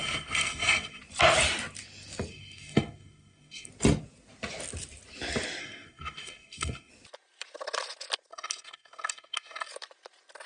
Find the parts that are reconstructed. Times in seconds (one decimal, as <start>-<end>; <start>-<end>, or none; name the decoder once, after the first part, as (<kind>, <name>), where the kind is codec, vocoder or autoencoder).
0.0-1.0 (codec, SNAC); 2.3-3.7; 5.6-6.9; 8.3-9.7